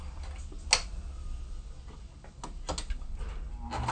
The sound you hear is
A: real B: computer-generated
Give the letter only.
A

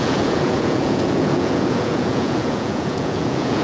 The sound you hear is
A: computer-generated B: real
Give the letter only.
A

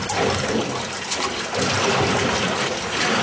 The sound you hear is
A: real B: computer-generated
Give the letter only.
A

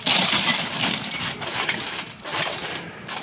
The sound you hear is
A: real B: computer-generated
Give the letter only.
A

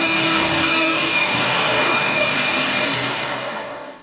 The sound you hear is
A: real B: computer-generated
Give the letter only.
B